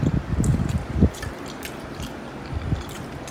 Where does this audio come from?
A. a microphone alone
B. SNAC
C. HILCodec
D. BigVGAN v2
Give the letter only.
D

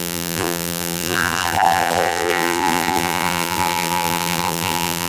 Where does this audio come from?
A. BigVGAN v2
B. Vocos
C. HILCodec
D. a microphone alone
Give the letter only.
A